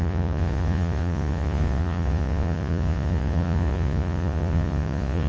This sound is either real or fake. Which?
fake